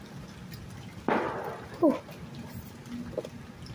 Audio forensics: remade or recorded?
recorded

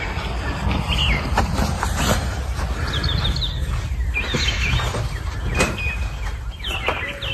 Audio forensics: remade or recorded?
recorded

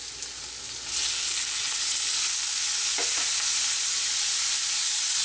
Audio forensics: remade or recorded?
recorded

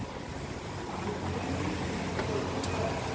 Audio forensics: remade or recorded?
recorded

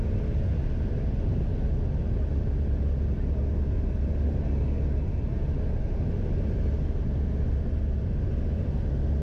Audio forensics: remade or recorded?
recorded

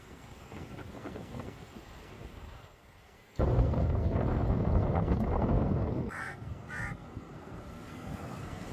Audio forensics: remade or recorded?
remade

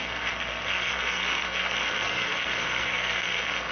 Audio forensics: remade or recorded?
remade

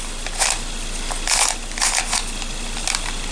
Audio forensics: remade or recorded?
recorded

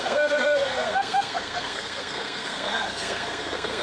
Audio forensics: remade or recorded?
remade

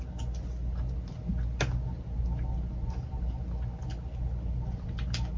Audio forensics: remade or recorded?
recorded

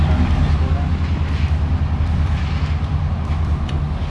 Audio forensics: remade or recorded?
recorded